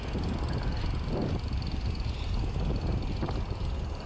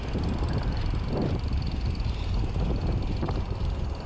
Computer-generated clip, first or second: second